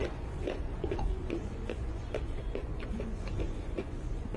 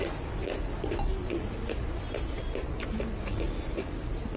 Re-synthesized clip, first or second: first